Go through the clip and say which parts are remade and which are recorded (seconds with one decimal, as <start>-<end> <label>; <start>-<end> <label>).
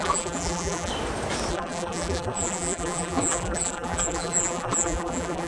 0.0-0.9 remade; 0.9-1.5 recorded; 1.5-5.5 remade